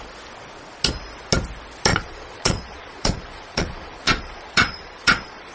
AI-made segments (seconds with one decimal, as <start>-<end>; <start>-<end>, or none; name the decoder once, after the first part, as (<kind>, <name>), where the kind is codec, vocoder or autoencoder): 1.9-5.5 (vocoder, Vocos)